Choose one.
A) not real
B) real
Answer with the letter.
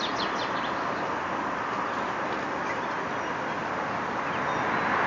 B